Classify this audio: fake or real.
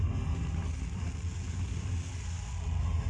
real